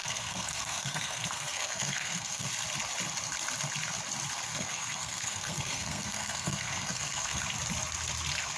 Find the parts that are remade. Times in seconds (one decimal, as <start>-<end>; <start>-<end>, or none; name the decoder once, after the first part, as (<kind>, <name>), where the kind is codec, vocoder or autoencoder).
0.0-2.5 (codec, SNAC); 4.5-7.4